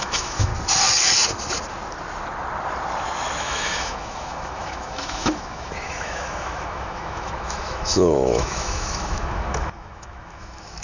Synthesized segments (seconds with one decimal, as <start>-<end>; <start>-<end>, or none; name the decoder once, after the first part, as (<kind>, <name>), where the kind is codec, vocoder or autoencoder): 0.0-0.5 (autoencoder, DAC-VAE); 3.4-10.8